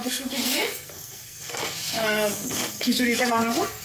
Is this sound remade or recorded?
remade